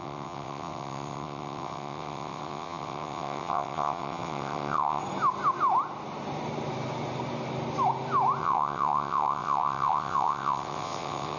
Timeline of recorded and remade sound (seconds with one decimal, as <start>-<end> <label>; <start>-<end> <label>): 0.0-5.0 remade; 5.0-8.4 recorded; 8.4-11.4 remade